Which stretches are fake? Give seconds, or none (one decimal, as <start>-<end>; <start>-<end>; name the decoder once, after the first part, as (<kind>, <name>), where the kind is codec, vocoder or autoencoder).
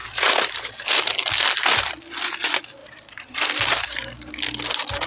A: 0.0-1.1 (vocoder, BigVGAN v2); 2.8-4.3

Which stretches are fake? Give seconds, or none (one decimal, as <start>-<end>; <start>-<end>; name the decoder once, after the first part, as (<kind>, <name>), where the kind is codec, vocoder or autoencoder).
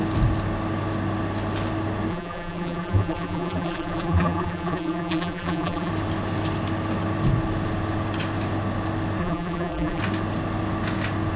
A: 2.1-5.9 (vocoder, BigVGAN v2); 9.2-10.0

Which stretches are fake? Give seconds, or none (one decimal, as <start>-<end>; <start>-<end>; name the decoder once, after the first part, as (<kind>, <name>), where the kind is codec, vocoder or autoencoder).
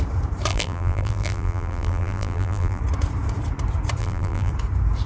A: 0.5-2.8 (vocoder, BigVGAN v2); 4.0-4.5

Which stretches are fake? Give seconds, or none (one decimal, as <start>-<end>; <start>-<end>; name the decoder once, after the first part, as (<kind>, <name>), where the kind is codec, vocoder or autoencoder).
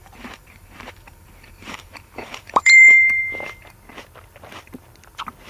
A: 0.0-3.2 (vocoder, BigVGAN v2)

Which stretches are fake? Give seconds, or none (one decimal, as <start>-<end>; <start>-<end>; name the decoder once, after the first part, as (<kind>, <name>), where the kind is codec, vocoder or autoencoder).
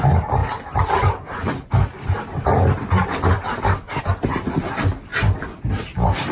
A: 5.1-6.3 (vocoder, BigVGAN v2)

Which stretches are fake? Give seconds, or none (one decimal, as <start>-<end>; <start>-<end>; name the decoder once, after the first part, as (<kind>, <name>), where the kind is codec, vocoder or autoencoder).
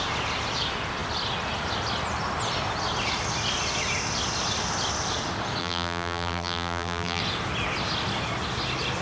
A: 5.6-7.2 (vocoder, BigVGAN v2)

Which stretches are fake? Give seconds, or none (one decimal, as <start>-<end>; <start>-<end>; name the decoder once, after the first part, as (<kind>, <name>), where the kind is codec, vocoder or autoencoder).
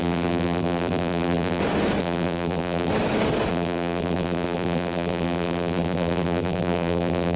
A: 0.0-1.6 (vocoder, BigVGAN v2); 2.0-2.9; 3.5-7.4